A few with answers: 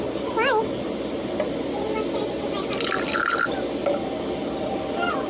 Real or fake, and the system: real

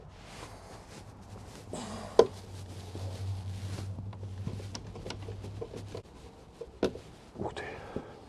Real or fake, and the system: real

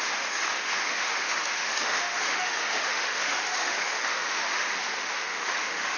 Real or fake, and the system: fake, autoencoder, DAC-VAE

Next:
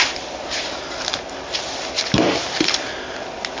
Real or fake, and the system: real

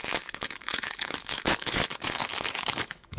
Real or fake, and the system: fake, autoencoder, DAC-VAE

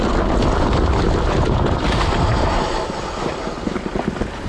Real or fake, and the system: real